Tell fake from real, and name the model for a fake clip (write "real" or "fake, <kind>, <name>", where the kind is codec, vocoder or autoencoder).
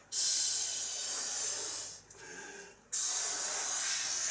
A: real